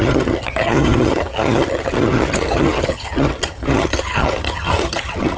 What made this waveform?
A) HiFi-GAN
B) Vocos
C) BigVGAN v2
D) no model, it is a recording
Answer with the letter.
A